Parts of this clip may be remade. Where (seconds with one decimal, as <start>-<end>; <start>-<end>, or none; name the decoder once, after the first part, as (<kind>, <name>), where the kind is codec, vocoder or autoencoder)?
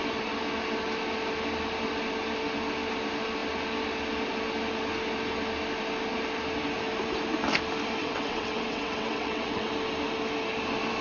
8.0-9.7 (vocoder, WaveNeXt)